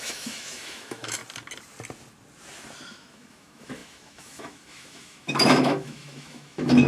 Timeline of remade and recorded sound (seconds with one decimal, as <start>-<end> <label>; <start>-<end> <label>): 0.0-1.2 remade; 1.2-2.9 recorded; 2.9-6.9 remade